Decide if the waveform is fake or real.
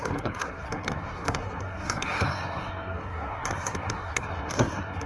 fake